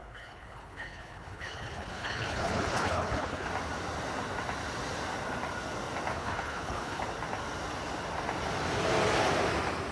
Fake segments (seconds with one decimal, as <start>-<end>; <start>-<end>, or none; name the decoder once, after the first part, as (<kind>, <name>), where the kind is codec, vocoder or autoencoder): 0.0-3.5 (codec, HILCodec); 6.1-7.0